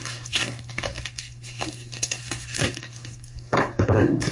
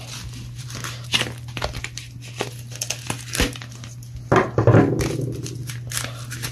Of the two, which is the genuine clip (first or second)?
second